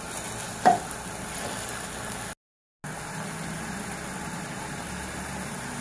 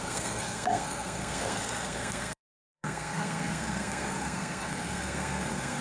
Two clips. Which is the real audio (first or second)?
first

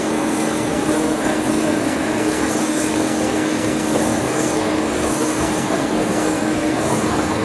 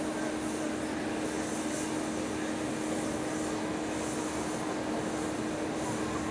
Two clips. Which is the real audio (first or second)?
second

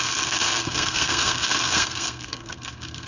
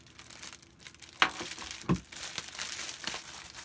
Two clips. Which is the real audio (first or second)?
second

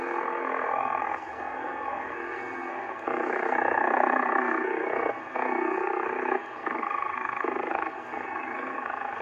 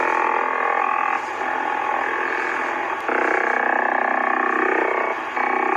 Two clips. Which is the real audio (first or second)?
second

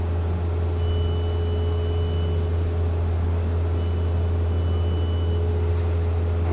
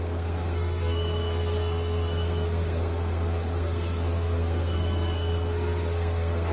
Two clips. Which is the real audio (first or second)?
first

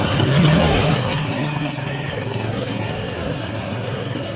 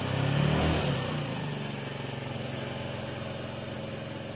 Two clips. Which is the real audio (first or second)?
second